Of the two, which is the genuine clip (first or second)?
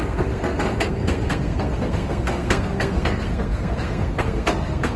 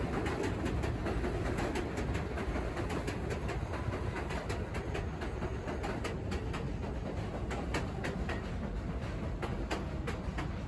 second